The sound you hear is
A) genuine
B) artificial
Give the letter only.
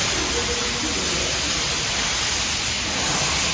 A